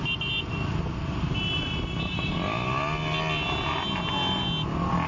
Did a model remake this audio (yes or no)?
no